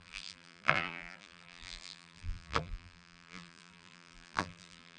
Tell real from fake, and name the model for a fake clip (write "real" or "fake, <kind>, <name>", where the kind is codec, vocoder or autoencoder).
fake, vocoder, BigVGAN v2